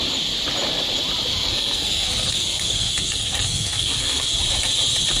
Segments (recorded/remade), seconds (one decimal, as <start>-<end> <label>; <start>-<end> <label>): 0.0-1.3 recorded; 1.3-4.4 remade; 4.4-5.2 recorded